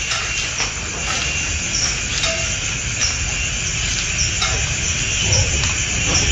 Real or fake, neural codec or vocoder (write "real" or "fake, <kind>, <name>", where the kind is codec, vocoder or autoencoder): real